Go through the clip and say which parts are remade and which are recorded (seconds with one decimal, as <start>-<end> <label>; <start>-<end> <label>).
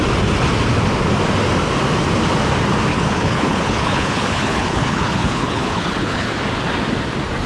0.0-2.9 recorded; 2.9-6.3 remade; 6.3-7.5 recorded